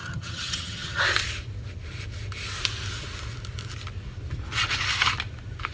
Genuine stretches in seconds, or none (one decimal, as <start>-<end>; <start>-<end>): 1.0-5.7